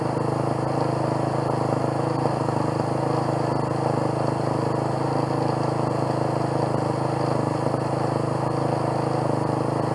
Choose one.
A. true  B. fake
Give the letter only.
A